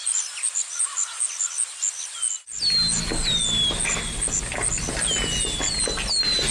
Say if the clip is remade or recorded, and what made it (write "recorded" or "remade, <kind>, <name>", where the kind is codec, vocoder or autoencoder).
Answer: recorded